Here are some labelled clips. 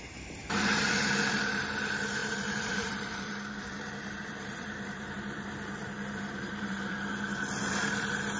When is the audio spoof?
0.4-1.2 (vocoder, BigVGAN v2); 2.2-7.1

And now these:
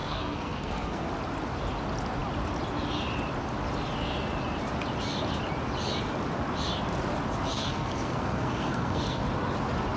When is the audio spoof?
0.0-1.1 (codec, SNAC); 7.5-9.2

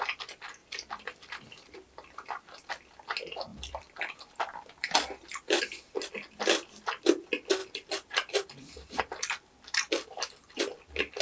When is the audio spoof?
0.6-2.7 (vocoder, BigVGAN v2); 3.5-5.6; 7.6-9.0

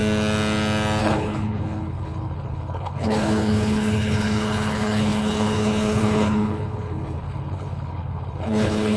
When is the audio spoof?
1.0-9.0 (codec, HILCodec)

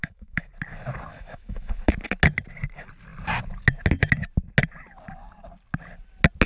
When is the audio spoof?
0.0-0.5 (autoencoder, DAC-VAE); 1.1-1.9

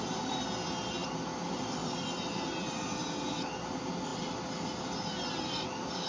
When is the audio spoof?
1.0-3.0 (vocoder, BigVGAN v2); 4.1-6.1

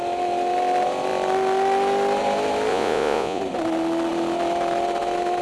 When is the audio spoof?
2.7-3.4 (vocoder, Vocos)